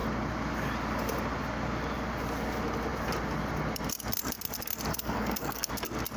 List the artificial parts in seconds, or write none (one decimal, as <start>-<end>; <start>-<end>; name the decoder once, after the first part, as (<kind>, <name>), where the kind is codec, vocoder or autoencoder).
4.9-5.7 (codec, SNAC)